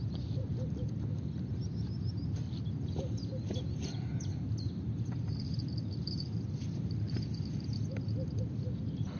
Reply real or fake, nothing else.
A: real